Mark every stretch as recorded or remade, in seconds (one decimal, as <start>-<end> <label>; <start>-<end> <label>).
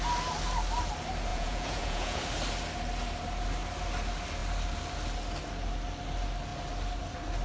0.0-1.3 recorded; 1.3-2.2 remade; 2.2-7.4 recorded